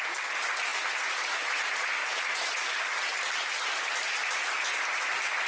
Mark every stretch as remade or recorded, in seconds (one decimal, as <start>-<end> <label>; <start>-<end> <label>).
0.0-2.0 recorded; 2.0-2.6 remade; 2.6-5.5 recorded

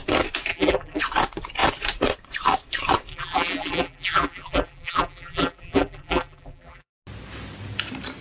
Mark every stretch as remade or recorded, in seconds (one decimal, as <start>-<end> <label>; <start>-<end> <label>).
0.0-0.5 recorded; 0.5-1.0 remade; 1.0-3.1 recorded; 3.1-6.9 remade; 6.9-8.2 recorded

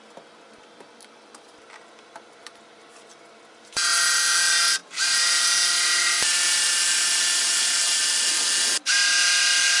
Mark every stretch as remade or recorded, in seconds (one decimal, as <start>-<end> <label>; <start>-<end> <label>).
0.0-4.8 recorded; 4.8-8.0 remade; 8.0-9.8 recorded